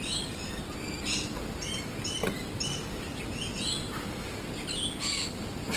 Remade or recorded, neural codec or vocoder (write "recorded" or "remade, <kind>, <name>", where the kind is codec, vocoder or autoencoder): recorded